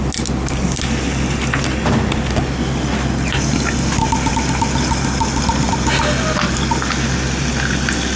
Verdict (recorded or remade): recorded